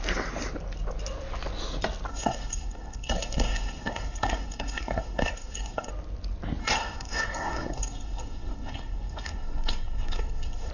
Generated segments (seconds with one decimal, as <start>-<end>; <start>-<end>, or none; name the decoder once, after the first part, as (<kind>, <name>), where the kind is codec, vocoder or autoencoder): 2.1-5.9 (codec, SNAC); 6.6-10.7